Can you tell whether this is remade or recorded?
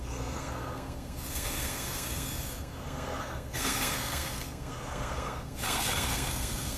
remade